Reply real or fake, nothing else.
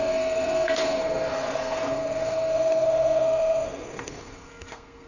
fake